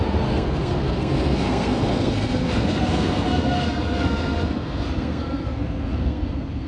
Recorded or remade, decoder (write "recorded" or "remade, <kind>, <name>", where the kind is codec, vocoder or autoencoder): remade, codec, SNAC